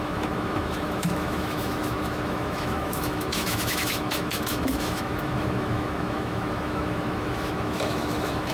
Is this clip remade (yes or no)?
yes